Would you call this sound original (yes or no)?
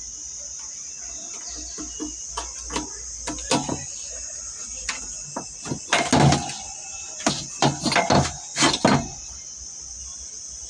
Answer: yes